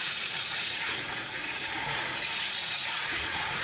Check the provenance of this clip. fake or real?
fake